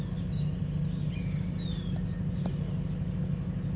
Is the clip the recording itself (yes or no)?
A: yes